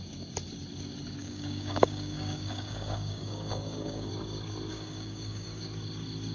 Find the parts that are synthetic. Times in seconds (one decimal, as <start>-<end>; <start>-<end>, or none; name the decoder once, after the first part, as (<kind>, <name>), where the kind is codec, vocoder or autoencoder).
1.2-4.1 (codec, DAC); 4.7-5.6